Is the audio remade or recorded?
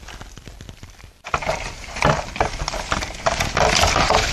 remade